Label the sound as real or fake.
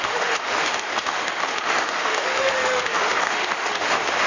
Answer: fake